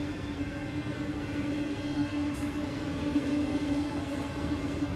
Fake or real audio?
fake